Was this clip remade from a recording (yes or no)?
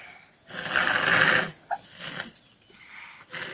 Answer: no